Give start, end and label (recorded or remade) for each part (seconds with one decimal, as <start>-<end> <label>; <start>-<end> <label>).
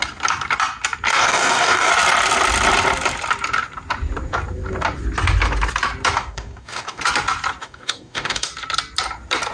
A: 0.0-1.1 recorded; 1.1-1.9 remade; 1.9-6.2 recorded; 6.2-7.0 remade; 7.0-7.6 recorded; 7.6-8.5 remade; 8.5-9.5 recorded